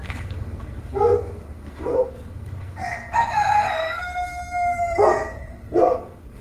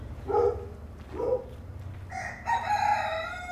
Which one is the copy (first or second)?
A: first